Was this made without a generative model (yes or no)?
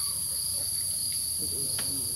no